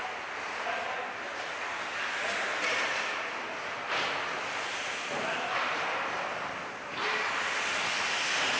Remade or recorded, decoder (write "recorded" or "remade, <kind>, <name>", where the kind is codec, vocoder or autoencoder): recorded